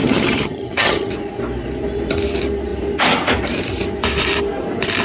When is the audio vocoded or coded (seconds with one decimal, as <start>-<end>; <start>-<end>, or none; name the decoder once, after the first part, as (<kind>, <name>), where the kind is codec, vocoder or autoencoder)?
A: 0.0-1.1 (vocoder, HiFi-GAN)

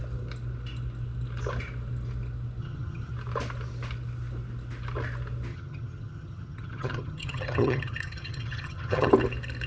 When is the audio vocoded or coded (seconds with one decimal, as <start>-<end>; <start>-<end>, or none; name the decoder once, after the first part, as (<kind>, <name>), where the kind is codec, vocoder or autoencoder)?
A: 2.6-3.1 (vocoder, HiFi-GAN); 5.5-9.1

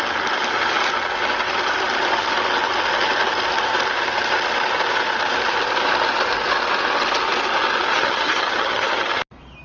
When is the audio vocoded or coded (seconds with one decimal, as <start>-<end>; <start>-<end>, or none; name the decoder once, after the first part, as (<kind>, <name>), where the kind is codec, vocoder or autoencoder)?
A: 7.9-9.2 (vocoder, HiFi-GAN)

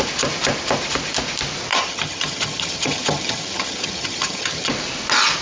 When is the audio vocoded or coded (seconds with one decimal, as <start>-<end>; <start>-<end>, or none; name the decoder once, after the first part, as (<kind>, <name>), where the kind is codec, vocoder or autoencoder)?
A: 1.7-4.7 (vocoder, HiFi-GAN)

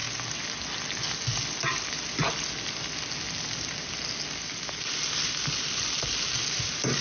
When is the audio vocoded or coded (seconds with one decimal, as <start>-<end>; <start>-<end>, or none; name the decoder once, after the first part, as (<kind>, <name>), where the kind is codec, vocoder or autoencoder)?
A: none

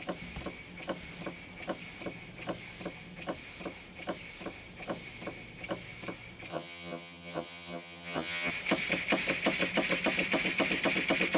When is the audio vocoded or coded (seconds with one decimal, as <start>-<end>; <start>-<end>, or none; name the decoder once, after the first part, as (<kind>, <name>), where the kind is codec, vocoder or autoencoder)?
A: 6.5-8.5 (vocoder, HiFi-GAN)